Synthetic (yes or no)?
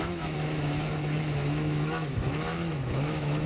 yes